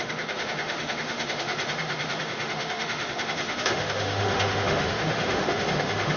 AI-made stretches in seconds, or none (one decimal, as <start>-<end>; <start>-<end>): 0.0-6.2